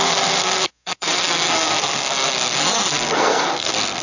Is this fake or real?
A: fake